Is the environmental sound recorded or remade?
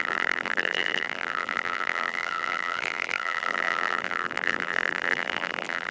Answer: remade